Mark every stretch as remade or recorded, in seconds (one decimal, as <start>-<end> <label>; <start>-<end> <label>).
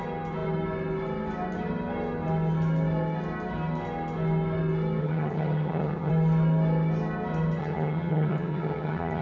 0.0-5.0 recorded; 5.0-6.1 remade; 6.1-7.6 recorded; 7.6-9.2 remade